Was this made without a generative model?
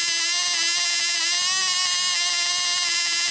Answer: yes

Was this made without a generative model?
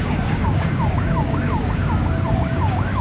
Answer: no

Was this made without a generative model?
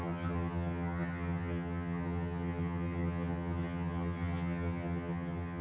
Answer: no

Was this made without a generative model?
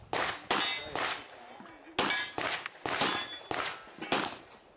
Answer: yes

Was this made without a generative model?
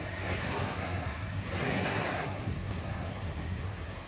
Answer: no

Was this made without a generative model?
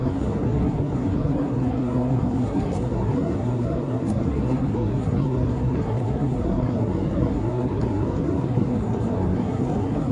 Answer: no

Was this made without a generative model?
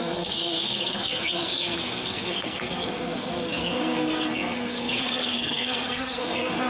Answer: no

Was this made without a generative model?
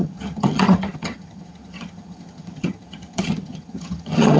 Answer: no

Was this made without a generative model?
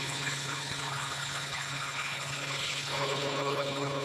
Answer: no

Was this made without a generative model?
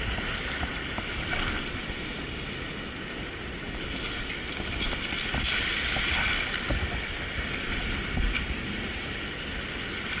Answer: yes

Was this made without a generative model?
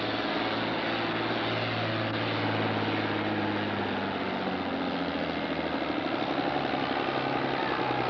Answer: yes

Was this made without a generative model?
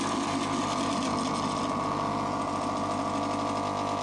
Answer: yes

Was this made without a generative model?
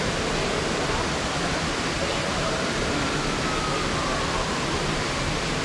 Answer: yes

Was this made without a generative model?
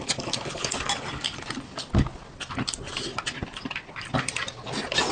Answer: yes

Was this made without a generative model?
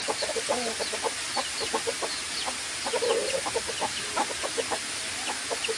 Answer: yes